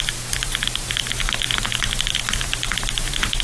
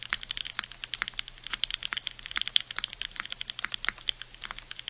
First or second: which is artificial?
first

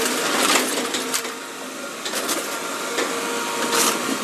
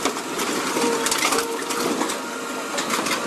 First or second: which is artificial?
first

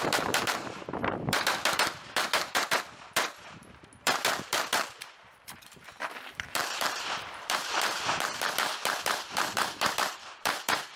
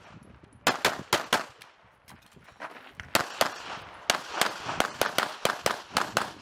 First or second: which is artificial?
first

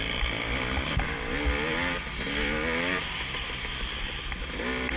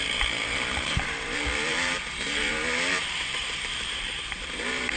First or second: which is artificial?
second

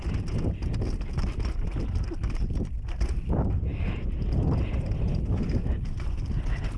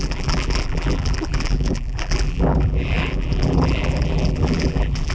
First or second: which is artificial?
second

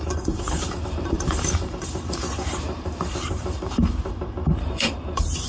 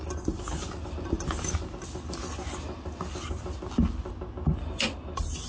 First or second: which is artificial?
first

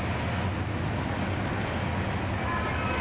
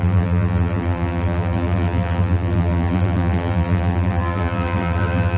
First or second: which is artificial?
second